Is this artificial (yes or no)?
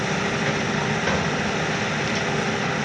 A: no